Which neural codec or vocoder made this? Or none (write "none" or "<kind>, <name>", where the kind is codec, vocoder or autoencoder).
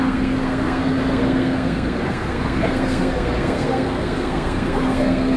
codec, SNAC